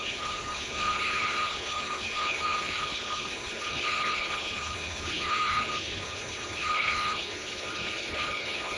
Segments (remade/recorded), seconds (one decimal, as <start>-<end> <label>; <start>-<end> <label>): 0.0-8.8 remade